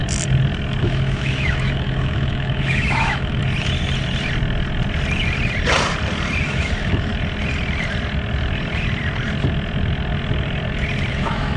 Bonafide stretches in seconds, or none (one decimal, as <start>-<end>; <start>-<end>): 0.0-0.8; 3.4-6.4; 7.1-11.1